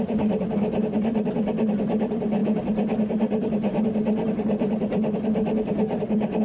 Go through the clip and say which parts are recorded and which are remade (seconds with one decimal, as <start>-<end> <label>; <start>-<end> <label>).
0.0-6.4 remade